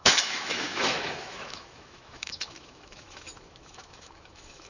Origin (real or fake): fake